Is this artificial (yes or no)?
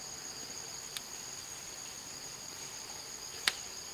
no